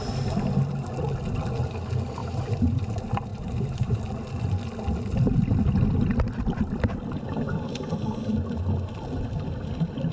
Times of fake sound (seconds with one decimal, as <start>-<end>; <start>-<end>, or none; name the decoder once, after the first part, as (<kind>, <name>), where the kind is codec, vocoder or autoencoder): 2.2-2.9 (vocoder, BigVGAN v2); 3.3-4.0